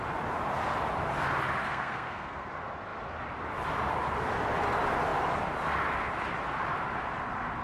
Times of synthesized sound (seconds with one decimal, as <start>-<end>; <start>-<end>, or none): 1.6-2.5